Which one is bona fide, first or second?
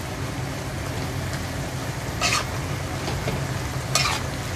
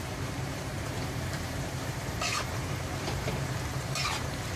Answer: first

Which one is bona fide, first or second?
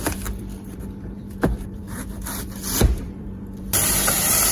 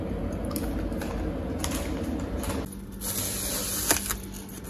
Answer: second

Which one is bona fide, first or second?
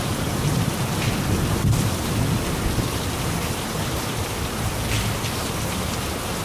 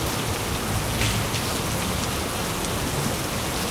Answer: second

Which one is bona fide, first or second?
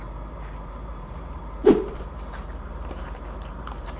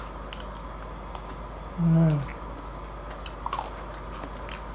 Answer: second